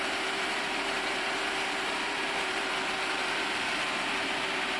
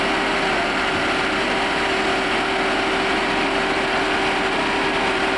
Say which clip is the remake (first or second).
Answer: first